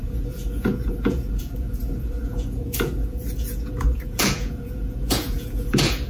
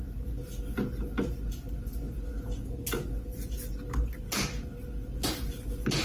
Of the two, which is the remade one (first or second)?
first